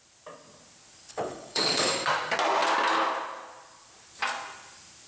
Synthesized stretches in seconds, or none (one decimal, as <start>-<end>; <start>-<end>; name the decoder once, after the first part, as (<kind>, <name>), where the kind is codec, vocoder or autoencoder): 1.1-1.9 (codec, HILCodec)